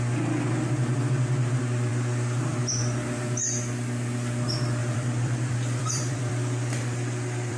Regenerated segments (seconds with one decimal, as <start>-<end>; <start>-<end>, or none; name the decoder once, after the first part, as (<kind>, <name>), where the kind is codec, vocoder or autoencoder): 1.9-2.7 (vocoder, BigVGAN v2); 4.8-7.6